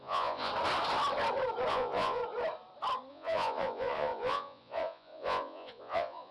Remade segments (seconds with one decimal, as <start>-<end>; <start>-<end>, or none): 0.0-0.5; 1.7-2.2; 3.1-6.3